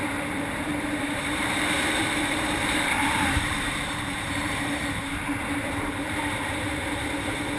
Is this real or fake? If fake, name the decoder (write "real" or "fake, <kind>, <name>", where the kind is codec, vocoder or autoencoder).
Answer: fake, vocoder, BigVGAN v2